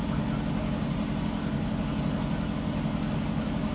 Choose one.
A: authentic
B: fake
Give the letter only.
A